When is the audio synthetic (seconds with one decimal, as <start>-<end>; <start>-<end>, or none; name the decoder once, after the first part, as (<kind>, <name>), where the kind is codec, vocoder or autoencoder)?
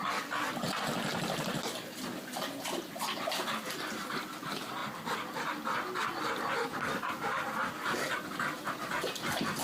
none